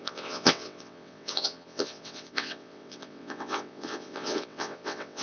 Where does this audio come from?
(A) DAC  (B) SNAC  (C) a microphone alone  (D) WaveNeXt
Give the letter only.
D